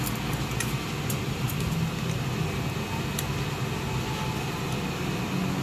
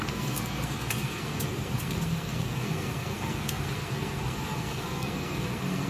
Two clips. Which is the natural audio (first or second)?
first